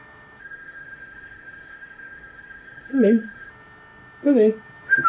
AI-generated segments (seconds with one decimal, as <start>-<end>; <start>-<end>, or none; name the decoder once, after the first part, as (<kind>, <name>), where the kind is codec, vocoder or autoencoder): 0.4-3.5 (codec, SNAC)